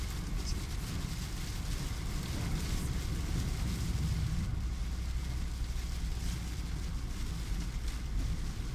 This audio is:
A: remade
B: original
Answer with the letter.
B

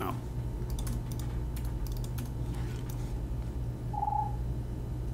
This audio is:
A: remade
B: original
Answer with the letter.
B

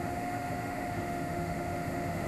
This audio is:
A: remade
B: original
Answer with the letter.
A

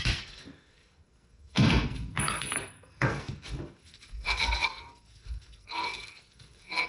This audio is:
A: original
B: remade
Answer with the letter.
B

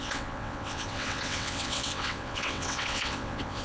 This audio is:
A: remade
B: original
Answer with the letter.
A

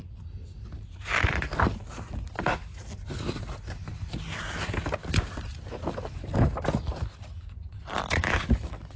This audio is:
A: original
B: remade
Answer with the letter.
A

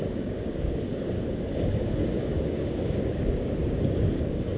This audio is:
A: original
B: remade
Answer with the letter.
B